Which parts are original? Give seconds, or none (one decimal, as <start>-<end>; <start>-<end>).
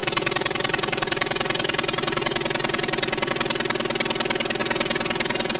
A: 3.3-4.6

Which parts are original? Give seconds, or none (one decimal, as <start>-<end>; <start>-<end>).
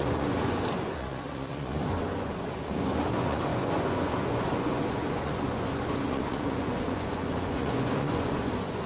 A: none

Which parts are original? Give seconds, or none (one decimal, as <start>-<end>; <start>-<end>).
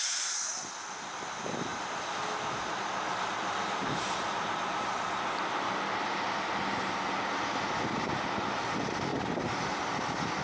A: 0.7-10.4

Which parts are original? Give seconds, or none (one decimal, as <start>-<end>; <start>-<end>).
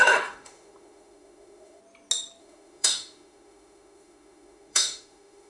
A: 1.8-2.4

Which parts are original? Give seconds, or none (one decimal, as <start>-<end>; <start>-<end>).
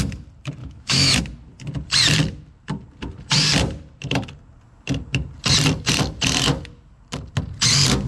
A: 0.0-0.6; 1.2-8.1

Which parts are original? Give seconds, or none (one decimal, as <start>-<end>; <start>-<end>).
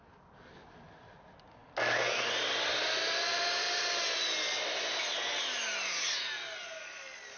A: 0.0-7.4